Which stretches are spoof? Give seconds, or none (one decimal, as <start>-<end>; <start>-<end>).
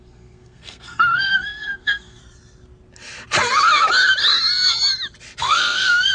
0.0-2.2; 5.4-6.1